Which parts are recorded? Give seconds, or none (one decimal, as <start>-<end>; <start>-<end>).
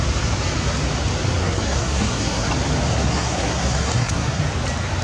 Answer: 0.0-1.4; 2.5-2.9; 4.4-5.0